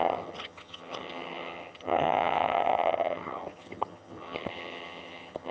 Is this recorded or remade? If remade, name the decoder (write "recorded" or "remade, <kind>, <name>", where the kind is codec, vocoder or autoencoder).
remade, vocoder, HiFi-GAN